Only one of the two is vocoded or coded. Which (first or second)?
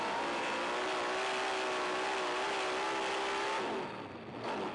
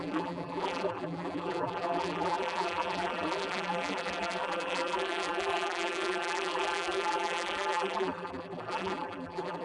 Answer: second